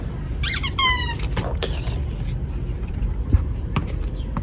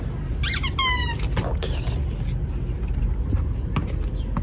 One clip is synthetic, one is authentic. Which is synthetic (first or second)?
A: first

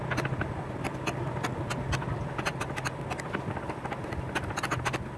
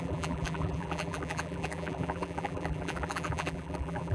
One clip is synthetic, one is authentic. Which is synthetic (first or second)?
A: second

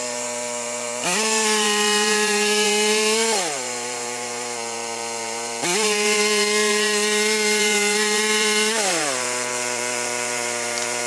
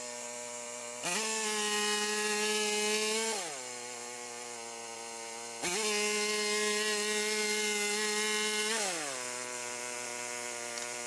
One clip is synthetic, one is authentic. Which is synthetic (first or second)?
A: first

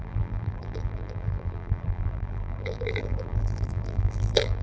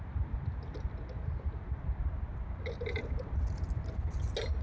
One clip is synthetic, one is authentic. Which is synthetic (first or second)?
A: first